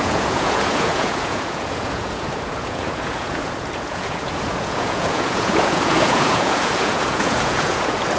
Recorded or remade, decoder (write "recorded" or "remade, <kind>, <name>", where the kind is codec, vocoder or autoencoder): remade, vocoder, Vocos